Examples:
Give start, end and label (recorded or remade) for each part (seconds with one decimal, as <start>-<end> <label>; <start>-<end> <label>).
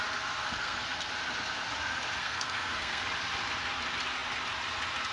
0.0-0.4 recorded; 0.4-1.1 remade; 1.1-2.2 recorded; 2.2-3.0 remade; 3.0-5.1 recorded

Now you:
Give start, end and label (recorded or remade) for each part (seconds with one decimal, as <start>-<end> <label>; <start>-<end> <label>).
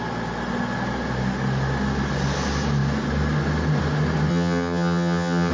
0.0-4.3 recorded; 4.3-5.5 remade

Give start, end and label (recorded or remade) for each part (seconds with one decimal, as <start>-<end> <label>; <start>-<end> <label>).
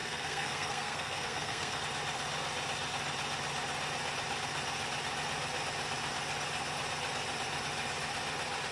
0.0-1.8 remade; 1.8-8.7 recorded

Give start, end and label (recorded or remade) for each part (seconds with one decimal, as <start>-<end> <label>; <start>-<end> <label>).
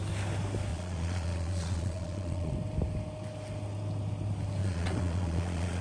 0.0-0.7 recorded; 0.7-2.5 remade; 2.5-4.6 recorded; 4.6-5.8 remade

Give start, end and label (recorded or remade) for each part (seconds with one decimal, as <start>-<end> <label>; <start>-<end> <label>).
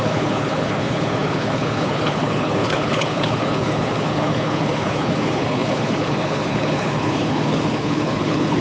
0.0-8.6 remade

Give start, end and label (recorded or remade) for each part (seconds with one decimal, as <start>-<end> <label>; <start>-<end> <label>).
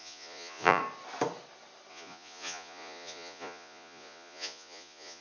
0.0-0.8 remade; 0.8-1.9 recorded; 1.9-5.2 remade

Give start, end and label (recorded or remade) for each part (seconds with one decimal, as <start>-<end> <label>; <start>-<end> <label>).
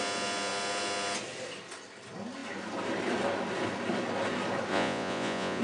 0.0-4.7 recorded; 4.7-5.6 remade